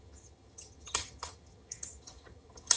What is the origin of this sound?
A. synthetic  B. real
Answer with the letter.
A